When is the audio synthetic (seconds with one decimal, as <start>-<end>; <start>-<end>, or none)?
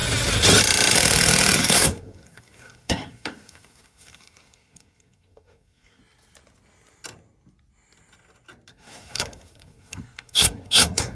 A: 1.6-6.0; 8.7-11.2